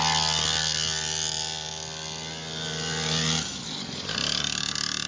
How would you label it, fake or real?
real